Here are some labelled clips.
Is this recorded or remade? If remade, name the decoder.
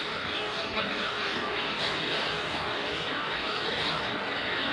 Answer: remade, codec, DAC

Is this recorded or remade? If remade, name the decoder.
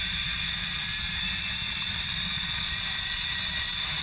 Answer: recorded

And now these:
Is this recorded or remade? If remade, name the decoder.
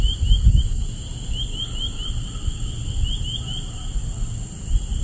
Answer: recorded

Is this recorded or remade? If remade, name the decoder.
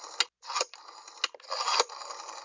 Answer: recorded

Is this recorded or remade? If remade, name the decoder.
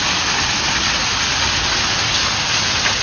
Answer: recorded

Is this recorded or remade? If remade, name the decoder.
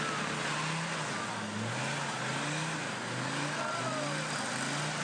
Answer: recorded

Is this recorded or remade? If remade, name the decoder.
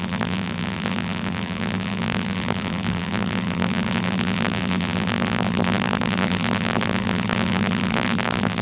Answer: remade, vocoder, BigVGAN v2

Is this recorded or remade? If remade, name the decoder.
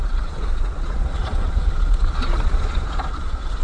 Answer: remade, vocoder, Vocos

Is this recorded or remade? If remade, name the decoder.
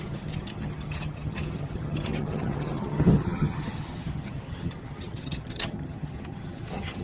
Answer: remade, vocoder, HiFi-GAN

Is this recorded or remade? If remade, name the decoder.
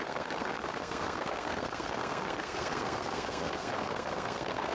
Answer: remade, codec, SNAC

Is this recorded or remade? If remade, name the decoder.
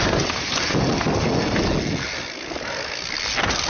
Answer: recorded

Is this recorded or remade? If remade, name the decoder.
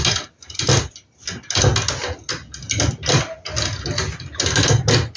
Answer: recorded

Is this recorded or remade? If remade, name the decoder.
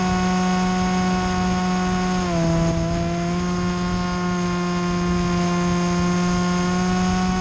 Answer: recorded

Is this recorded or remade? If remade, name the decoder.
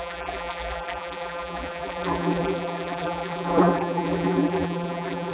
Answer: remade, vocoder, BigVGAN v2